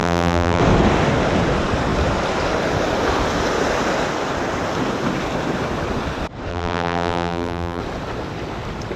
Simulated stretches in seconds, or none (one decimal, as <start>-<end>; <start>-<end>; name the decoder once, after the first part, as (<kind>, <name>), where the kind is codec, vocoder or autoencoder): 0.0-0.6 (vocoder, BigVGAN v2); 6.5-7.8